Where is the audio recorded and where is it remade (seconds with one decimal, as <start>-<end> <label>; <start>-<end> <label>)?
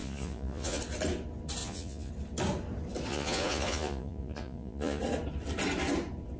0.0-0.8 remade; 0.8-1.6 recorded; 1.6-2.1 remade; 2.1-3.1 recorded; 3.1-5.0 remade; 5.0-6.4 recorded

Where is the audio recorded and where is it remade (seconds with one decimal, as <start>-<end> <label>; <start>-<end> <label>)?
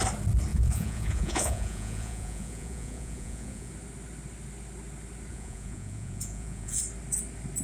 0.0-0.5 recorded; 0.5-3.7 remade; 3.7-5.3 recorded; 5.3-6.8 remade; 6.8-7.6 recorded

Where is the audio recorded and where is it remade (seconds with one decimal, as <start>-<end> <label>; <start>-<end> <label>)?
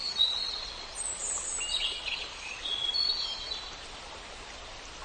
0.0-0.5 remade; 0.5-1.7 recorded; 1.7-2.9 remade; 2.9-5.0 recorded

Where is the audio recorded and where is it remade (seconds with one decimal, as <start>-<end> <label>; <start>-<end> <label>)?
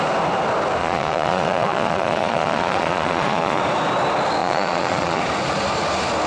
0.0-0.8 recorded; 0.8-3.6 remade; 3.6-4.4 recorded; 4.4-5.2 remade; 5.2-6.3 recorded